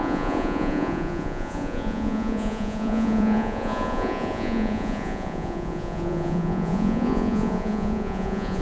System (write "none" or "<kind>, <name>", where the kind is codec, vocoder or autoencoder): vocoder, Vocos